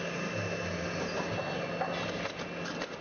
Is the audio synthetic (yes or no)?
no